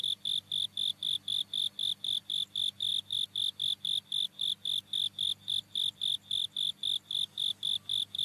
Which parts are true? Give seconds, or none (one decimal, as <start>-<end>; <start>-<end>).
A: 0.0-8.2